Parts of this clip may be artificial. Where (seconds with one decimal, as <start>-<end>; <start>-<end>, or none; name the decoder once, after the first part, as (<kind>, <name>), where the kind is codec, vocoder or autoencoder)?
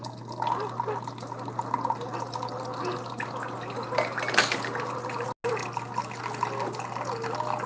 none